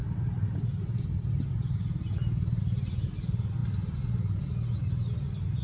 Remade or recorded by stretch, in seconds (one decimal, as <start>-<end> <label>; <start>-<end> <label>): 0.0-5.6 recorded

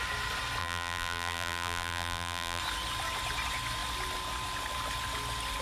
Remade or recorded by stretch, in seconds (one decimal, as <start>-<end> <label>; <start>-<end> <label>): 0.0-0.6 recorded; 0.6-2.6 remade; 2.6-5.6 recorded